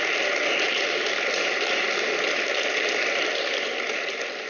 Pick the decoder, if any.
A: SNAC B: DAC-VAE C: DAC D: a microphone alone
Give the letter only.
D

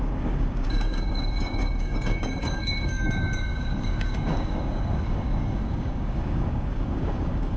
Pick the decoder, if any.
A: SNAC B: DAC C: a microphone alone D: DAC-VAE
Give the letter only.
B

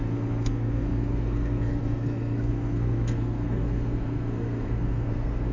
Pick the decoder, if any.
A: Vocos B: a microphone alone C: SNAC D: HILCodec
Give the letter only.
C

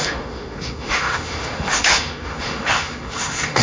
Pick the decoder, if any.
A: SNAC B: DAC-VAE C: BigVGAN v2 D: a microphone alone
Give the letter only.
B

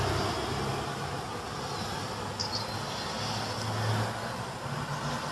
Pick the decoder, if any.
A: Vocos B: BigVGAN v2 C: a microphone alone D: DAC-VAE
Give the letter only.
C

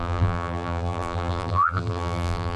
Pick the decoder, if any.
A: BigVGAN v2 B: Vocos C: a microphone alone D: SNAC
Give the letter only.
A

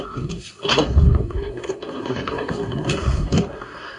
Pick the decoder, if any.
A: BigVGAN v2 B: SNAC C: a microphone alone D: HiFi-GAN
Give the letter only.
B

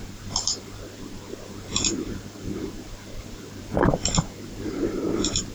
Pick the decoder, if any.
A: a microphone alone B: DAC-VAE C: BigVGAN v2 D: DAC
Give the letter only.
C